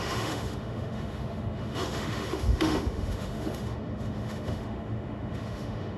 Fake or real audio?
fake